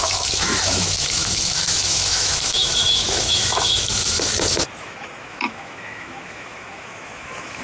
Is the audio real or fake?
fake